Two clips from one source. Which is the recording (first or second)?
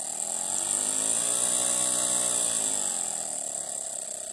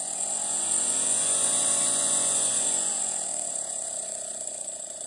first